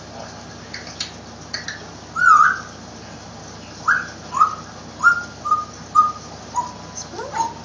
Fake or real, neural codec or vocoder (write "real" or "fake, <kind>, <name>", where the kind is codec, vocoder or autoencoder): real